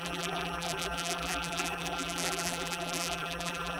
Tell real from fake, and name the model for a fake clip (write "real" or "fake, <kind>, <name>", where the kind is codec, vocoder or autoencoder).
fake, vocoder, BigVGAN v2